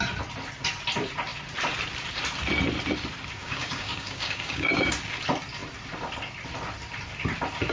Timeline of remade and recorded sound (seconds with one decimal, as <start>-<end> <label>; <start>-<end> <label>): 0.0-3.4 recorded; 3.4-4.9 remade; 4.9-7.7 recorded